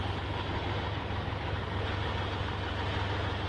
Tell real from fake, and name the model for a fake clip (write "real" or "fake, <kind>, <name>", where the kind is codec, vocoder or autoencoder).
real